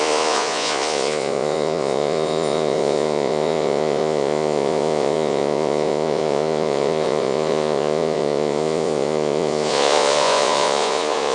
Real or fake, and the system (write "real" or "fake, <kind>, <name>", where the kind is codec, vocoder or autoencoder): fake, vocoder, Vocos